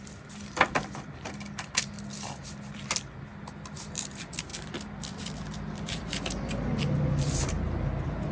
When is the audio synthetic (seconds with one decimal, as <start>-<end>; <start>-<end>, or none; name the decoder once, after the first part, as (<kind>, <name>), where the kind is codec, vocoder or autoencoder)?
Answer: none